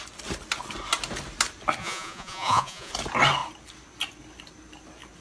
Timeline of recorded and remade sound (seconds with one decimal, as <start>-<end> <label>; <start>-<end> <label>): 0.0-1.8 recorded; 1.8-2.9 remade; 2.9-5.2 recorded